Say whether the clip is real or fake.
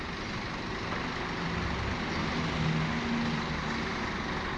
real